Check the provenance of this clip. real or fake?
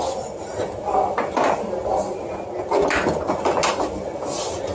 real